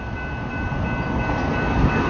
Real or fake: real